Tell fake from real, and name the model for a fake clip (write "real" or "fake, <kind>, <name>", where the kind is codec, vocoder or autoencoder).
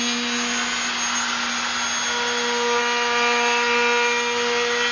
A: real